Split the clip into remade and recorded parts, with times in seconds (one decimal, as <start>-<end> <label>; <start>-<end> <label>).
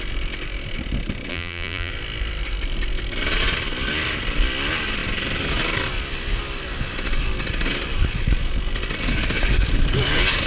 0.0-1.3 recorded; 1.3-1.9 remade; 1.9-10.5 recorded